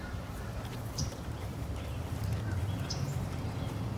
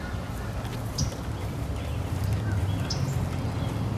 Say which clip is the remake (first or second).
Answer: first